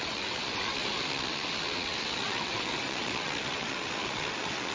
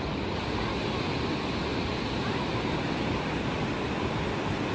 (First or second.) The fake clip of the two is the first